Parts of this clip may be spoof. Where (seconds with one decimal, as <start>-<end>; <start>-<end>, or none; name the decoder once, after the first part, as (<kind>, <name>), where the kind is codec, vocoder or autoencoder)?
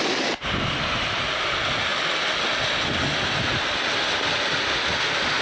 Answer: none